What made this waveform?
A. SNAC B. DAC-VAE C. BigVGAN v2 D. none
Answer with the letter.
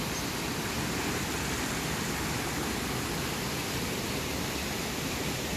D